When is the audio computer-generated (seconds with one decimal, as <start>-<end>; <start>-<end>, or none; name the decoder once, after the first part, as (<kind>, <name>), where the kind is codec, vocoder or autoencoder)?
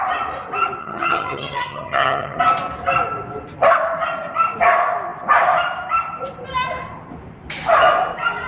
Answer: 0.8-2.4 (vocoder, HiFi-GAN)